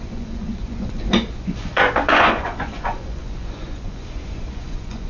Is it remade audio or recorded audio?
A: remade